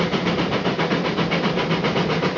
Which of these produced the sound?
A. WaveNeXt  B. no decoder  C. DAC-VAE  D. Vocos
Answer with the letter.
B